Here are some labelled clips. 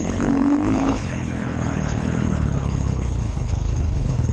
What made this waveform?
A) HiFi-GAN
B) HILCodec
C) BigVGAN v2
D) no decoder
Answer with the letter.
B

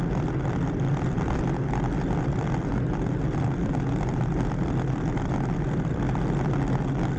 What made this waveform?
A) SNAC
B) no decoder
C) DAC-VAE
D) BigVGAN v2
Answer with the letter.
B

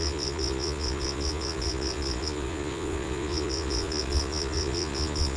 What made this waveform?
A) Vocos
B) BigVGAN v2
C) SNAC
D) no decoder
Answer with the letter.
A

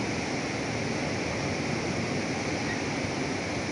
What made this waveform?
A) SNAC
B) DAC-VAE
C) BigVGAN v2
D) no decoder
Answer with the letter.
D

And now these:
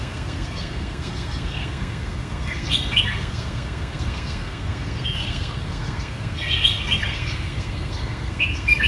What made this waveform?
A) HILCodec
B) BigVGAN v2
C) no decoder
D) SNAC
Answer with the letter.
D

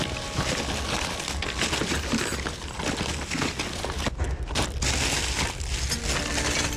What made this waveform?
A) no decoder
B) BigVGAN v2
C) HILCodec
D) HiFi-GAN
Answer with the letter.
A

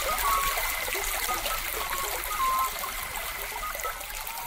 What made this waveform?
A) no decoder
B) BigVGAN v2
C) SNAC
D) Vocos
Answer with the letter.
A